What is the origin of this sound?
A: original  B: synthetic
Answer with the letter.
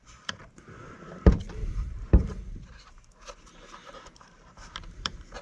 B